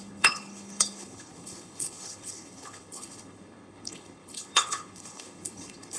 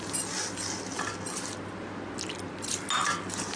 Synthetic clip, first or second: first